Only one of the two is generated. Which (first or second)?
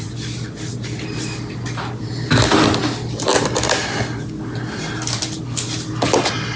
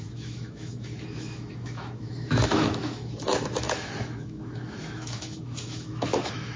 second